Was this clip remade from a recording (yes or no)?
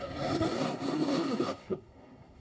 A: yes